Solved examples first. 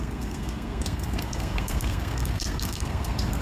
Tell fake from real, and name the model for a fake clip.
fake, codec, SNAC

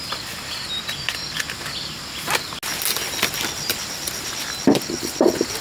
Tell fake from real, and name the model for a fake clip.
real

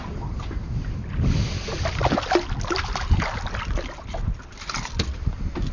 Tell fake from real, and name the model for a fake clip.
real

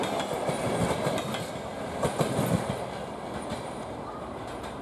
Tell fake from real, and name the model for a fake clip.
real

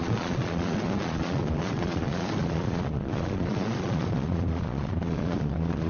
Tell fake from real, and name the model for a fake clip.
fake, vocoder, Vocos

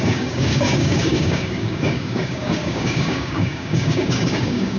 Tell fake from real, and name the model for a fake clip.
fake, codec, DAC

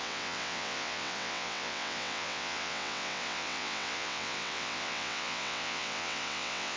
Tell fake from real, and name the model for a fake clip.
fake, vocoder, WaveNeXt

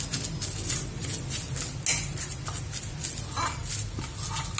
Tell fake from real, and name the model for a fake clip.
real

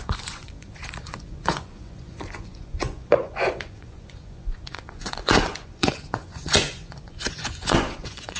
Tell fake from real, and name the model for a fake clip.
fake, vocoder, Vocos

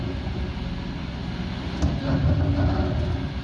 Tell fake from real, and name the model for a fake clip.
real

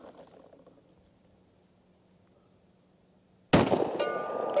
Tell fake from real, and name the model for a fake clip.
real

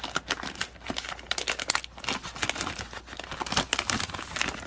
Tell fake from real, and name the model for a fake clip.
real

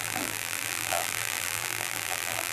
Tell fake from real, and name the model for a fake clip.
fake, vocoder, BigVGAN v2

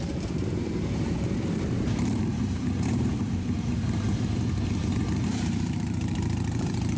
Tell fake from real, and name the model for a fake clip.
fake, vocoder, BigVGAN v2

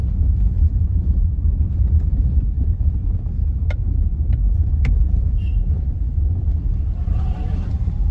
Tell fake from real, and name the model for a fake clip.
fake, vocoder, BigVGAN v2